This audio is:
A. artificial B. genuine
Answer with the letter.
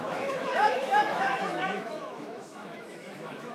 A